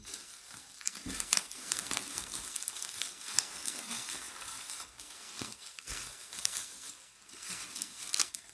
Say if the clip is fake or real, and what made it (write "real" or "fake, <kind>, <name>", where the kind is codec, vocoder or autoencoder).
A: fake, codec, SNAC